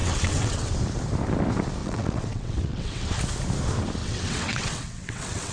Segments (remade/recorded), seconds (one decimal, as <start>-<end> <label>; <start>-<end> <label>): 0.0-0.7 remade; 0.7-1.8 recorded; 1.8-3.2 remade; 3.2-4.0 recorded; 4.0-5.5 remade